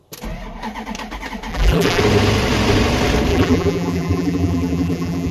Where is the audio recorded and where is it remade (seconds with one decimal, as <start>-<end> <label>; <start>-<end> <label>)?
0.0-1.5 recorded; 1.5-2.0 remade; 2.0-3.3 recorded; 3.3-5.3 remade